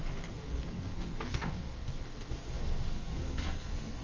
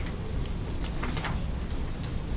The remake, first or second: first